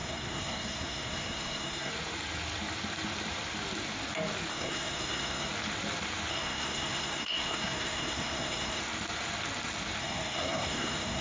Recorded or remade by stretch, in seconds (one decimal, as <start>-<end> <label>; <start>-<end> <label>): 0.0-1.9 remade; 1.9-4.5 recorded; 4.5-5.5 remade; 5.5-6.3 recorded; 6.3-8.8 remade; 8.8-10.0 recorded; 10.0-11.2 remade